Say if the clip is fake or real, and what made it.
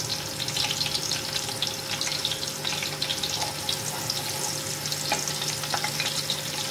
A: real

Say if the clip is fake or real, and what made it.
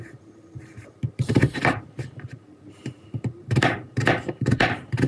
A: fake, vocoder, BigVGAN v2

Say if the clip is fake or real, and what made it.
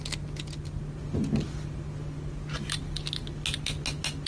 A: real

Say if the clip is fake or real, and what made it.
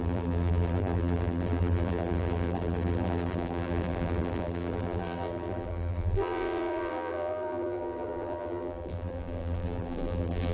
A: fake, vocoder, BigVGAN v2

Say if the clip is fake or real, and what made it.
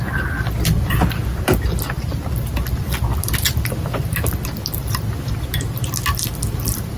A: real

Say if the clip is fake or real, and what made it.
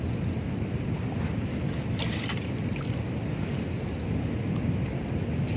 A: real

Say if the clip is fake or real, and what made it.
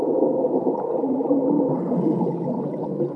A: real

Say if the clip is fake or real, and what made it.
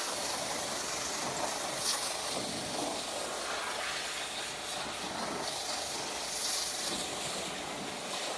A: real